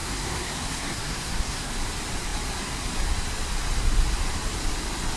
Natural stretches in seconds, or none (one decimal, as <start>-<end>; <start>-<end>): 1.7-5.2